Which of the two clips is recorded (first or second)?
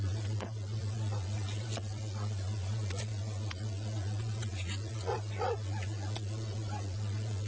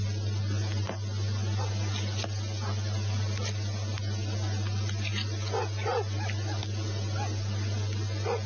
second